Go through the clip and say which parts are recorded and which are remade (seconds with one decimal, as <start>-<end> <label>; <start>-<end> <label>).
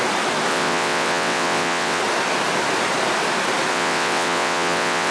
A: 0.0-0.5 recorded; 0.5-2.0 remade; 2.0-3.7 recorded; 3.7-5.1 remade